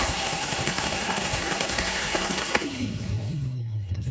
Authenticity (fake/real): fake